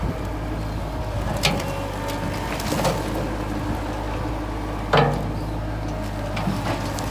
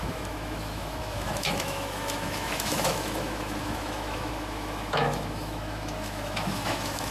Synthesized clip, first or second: second